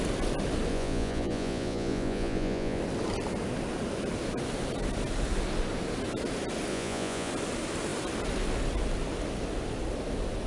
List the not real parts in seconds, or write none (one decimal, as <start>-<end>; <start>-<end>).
0.7-2.8; 6.7-7.3